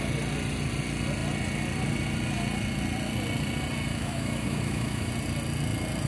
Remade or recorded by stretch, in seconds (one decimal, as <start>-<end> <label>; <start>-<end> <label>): 0.0-3.9 recorded; 3.9-5.1 remade; 5.1-6.1 recorded